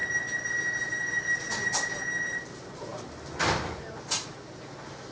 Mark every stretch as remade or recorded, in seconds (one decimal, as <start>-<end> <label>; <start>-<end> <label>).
0.0-5.1 recorded